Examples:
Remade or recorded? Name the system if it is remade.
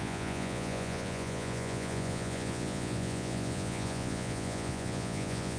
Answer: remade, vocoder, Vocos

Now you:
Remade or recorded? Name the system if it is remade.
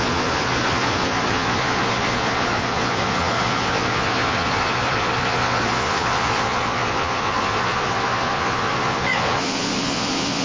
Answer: remade, vocoder, Vocos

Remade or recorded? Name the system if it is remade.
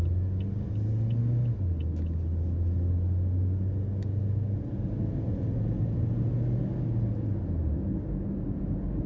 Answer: recorded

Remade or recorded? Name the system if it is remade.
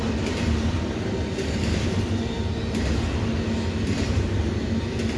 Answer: recorded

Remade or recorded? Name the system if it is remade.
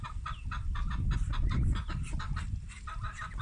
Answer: recorded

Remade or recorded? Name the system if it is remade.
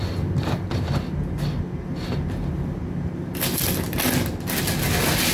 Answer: recorded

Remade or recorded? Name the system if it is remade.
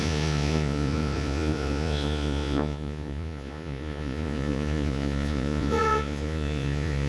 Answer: remade, vocoder, Vocos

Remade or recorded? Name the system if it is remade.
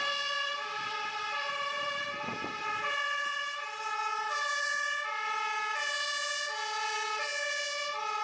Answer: recorded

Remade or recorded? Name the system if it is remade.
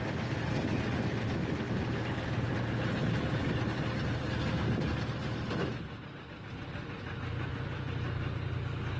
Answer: recorded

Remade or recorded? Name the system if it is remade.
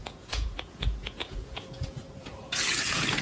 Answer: remade, vocoder, Vocos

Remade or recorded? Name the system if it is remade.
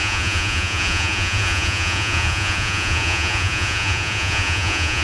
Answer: remade, vocoder, Vocos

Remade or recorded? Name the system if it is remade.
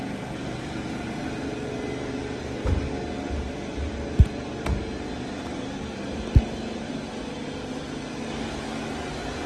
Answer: recorded